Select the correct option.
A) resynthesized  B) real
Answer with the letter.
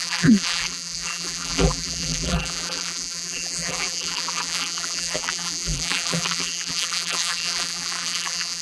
A